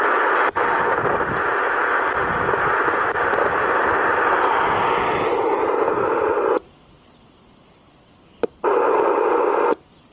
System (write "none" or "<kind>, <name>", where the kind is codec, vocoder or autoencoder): none